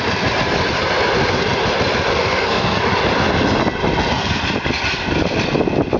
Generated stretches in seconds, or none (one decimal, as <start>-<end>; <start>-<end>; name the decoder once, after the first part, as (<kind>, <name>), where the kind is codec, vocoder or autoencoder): 2.1-2.8 (codec, SNAC)

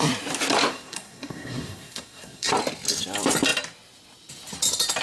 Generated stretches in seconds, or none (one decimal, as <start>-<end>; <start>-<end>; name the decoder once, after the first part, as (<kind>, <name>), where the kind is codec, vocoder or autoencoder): 0.7-2.5 (codec, SNAC)

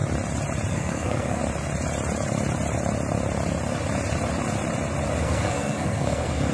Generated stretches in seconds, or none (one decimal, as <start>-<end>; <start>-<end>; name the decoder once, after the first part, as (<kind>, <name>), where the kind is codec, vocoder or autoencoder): 0.7-1.4 (codec, SNAC); 5.2-6.5

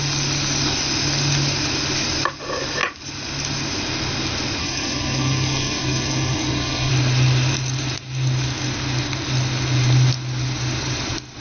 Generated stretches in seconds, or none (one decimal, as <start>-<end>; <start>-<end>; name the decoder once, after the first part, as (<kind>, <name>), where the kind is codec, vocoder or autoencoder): 4.6-6.9 (codec, SNAC)

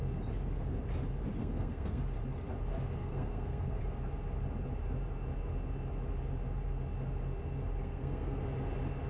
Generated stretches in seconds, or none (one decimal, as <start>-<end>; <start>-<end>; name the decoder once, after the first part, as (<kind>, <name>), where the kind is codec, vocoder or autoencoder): 1.4-2.0 (codec, SNAC); 3.0-3.8; 7.8-8.4

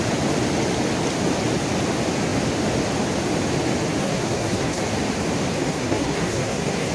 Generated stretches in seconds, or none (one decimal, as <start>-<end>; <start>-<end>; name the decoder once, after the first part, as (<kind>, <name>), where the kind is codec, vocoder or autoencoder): 4.0-4.8 (codec, SNAC); 5.6-6.9